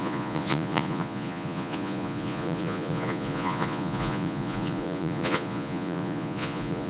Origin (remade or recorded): remade